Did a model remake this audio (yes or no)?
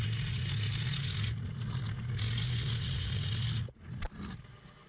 no